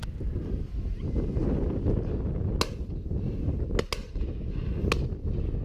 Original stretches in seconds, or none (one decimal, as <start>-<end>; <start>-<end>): 0.0-5.6